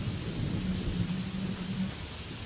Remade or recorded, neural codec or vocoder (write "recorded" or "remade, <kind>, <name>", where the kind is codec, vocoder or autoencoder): recorded